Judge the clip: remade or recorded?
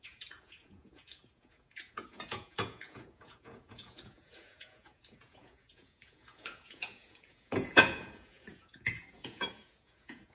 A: remade